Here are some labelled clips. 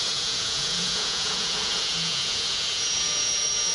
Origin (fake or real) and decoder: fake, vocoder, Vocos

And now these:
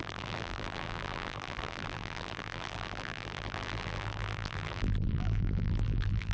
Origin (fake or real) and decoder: fake, vocoder, BigVGAN v2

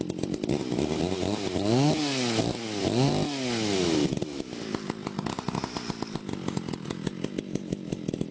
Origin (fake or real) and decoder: real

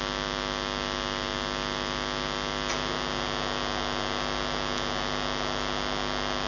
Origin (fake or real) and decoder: real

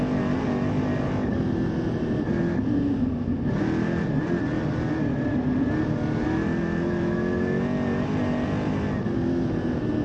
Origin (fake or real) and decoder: real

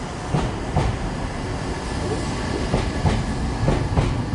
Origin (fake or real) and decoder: real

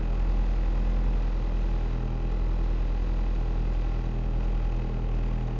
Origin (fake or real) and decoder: real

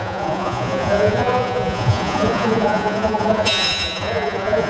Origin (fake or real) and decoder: fake, vocoder, Vocos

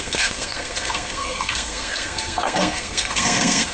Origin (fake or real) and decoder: fake, codec, SNAC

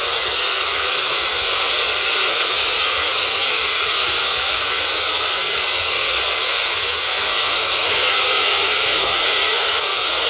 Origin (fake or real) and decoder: fake, codec, SNAC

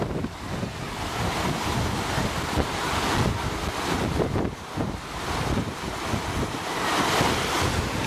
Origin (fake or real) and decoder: real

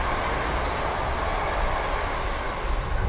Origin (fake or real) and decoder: real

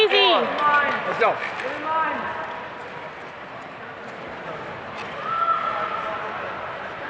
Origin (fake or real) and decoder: real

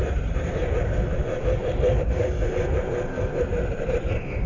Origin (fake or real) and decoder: fake, vocoder, BigVGAN v2